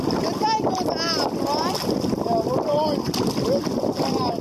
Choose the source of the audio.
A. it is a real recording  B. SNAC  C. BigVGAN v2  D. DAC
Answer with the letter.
A